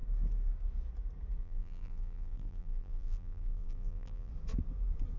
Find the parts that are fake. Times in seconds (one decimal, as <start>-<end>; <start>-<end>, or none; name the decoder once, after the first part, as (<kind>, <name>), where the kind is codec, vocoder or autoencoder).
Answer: 1.4-4.3 (vocoder, BigVGAN v2)